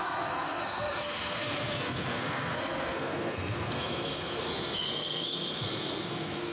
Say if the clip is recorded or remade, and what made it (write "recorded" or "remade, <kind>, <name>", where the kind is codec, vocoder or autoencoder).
remade, codec, SNAC